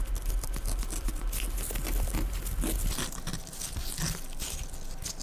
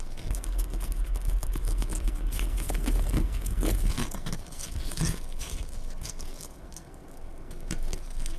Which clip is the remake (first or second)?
second